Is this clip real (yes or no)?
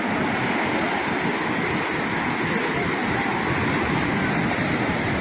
yes